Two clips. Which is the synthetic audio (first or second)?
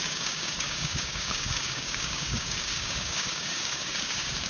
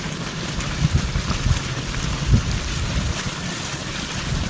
first